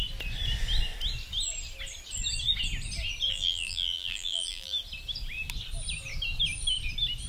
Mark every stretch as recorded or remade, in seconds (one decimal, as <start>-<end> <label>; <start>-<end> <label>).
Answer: 0.0-3.3 recorded; 3.3-4.8 remade; 4.8-7.3 recorded